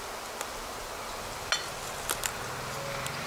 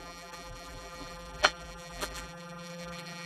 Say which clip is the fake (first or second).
second